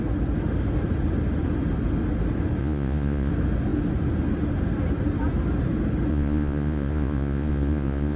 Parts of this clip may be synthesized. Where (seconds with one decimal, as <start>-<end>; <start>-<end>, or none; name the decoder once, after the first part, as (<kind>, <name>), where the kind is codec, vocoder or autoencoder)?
2.6-3.3 (vocoder, Vocos); 6.1-8.2